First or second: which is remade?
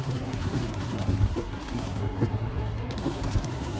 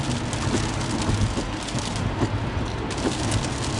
first